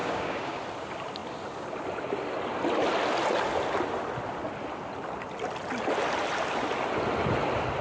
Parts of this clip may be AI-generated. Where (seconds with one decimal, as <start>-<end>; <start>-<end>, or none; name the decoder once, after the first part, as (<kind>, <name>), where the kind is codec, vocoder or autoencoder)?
0.0-0.6 (codec, DAC)